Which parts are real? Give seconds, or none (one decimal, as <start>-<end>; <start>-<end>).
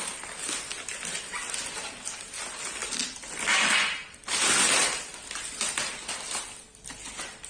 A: 0.0-7.5